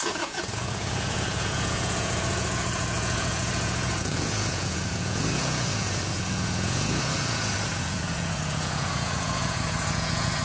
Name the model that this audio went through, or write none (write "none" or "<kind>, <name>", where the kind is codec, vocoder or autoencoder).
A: vocoder, Vocos